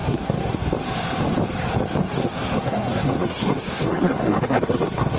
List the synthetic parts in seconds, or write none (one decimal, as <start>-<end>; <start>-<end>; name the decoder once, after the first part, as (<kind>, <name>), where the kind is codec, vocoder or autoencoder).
0.0-0.7 (codec, SNAC); 2.0-5.2